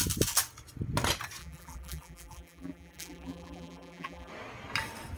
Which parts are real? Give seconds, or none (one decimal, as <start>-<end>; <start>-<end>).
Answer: 0.0-1.4; 4.3-5.2